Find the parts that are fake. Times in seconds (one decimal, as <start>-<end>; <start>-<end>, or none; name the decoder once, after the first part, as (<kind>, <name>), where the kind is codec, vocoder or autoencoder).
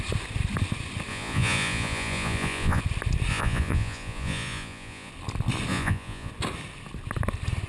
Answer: 1.1-2.8 (vocoder, Vocos); 3.3-5.1; 5.7-6.3